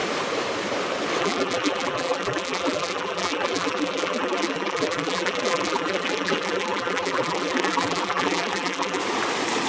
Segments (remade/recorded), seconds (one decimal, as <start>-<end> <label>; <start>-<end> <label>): 0.0-1.2 recorded; 1.2-9.0 remade; 9.0-9.7 recorded